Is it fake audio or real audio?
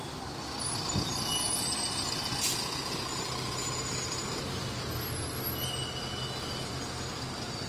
real